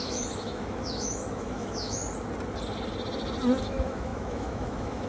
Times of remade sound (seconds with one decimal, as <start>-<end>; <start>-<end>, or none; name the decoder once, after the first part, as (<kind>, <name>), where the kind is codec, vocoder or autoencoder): 0.0-2.0 (autoencoder, DAC-VAE); 3.6-5.1